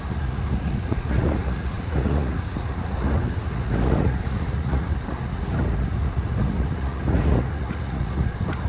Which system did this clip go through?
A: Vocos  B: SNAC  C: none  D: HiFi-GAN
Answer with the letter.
A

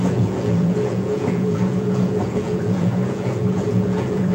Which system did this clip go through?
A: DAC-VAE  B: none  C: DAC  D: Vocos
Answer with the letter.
D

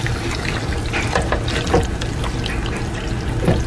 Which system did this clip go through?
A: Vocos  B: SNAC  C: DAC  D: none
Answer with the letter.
D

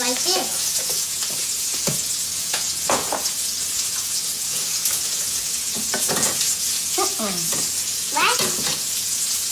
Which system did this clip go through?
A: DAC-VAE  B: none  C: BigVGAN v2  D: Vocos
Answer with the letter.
D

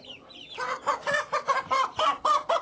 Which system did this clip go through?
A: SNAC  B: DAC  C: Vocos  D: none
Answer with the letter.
D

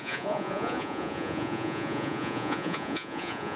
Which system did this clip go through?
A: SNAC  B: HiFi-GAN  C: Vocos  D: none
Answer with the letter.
C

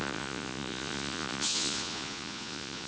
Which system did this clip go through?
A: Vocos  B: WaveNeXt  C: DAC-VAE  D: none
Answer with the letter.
A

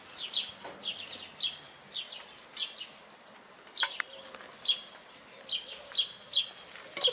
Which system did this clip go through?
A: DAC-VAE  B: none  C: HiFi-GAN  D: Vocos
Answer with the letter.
B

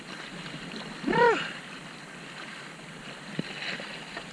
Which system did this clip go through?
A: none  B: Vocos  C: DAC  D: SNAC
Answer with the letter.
A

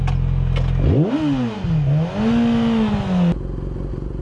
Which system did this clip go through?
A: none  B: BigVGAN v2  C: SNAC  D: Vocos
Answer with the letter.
A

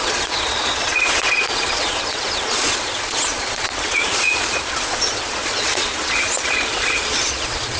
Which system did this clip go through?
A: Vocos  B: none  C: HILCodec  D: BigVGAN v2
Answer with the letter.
A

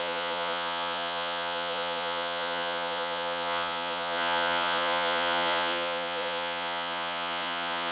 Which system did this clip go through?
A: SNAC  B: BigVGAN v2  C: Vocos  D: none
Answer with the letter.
C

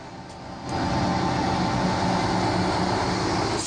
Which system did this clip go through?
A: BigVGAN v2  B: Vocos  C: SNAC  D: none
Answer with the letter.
D